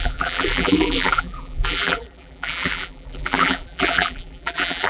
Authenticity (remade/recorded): remade